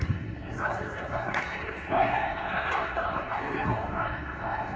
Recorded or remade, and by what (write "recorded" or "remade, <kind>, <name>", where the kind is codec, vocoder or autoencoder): remade, codec, SNAC